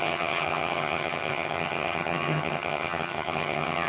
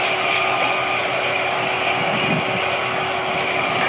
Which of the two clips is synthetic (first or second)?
first